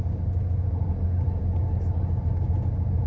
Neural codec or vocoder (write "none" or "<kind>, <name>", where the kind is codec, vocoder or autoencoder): none